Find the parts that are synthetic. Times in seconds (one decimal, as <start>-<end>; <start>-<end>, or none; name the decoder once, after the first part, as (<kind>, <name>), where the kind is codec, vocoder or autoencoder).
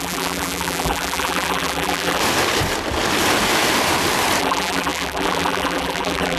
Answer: 0.0-2.2 (vocoder, BigVGAN v2); 4.4-6.4